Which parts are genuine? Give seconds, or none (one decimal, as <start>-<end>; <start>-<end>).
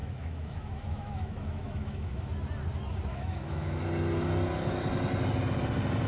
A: 2.3-3.1; 3.8-6.1